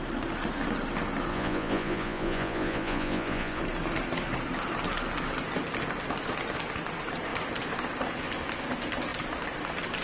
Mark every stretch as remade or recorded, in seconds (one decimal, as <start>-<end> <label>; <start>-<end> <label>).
0.0-1.3 recorded; 1.3-3.6 remade; 3.6-10.0 recorded

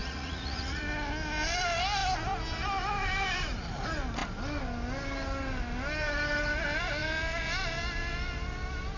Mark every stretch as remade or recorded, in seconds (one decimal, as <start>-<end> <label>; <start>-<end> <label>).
0.0-0.8 remade; 0.8-9.0 recorded

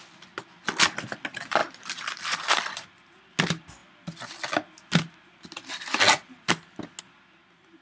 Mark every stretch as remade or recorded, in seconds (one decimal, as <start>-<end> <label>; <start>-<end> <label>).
0.0-7.8 recorded

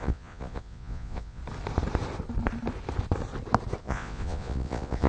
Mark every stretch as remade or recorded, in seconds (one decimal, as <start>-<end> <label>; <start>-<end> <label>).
0.0-1.4 remade; 1.4-3.8 recorded; 3.8-5.1 remade

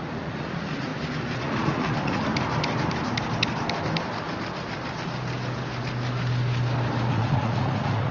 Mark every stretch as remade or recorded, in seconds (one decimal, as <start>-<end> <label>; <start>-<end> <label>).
0.0-0.9 remade; 0.9-1.4 recorded; 1.4-2.3 remade; 2.3-7.1 recorded; 7.1-8.1 remade

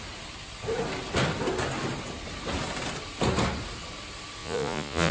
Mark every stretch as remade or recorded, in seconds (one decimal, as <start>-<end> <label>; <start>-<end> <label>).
0.0-4.4 recorded; 4.4-5.1 remade

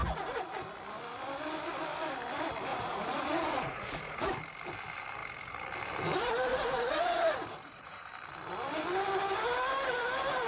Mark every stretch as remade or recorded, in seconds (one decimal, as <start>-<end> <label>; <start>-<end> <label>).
0.0-0.5 remade; 0.5-2.7 recorded; 2.7-4.3 remade; 4.3-6.5 recorded; 6.5-8.1 remade; 8.1-10.5 recorded

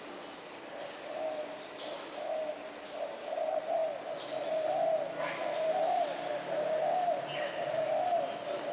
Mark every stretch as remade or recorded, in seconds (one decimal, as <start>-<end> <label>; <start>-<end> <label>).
0.0-8.7 recorded